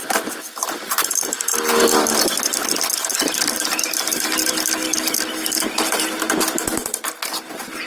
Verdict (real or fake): real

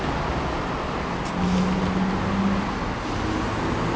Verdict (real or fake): real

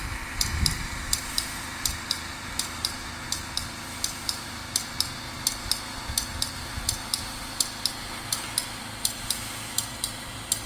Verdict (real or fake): real